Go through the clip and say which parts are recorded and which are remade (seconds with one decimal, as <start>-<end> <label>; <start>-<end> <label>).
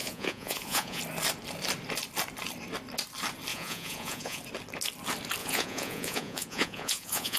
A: 0.0-1.0 remade; 1.0-3.5 recorded; 3.5-4.4 remade; 4.4-5.4 recorded; 5.4-7.4 remade